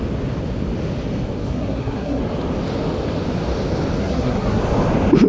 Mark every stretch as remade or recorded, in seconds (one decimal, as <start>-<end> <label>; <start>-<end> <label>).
0.0-1.4 recorded; 1.4-2.2 remade; 2.2-4.0 recorded; 4.0-4.6 remade; 4.6-5.3 recorded